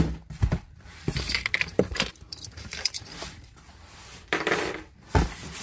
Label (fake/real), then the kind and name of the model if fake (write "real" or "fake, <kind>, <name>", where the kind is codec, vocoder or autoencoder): fake, vocoder, BigVGAN v2